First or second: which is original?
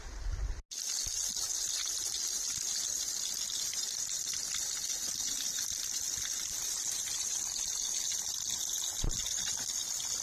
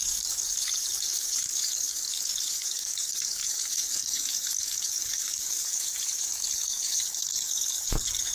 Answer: first